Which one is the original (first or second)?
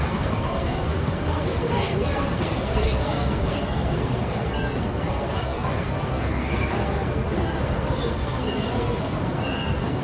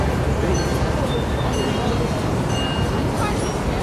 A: second